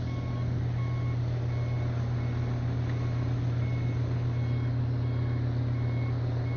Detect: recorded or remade recorded